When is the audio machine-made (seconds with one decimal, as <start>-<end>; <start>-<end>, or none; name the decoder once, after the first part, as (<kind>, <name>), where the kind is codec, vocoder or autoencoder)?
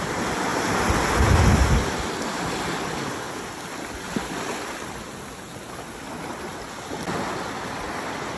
none